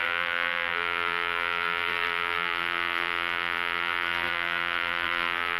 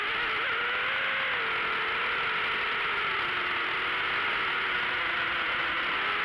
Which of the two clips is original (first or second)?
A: second